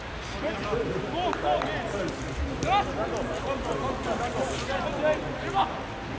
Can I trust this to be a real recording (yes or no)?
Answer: yes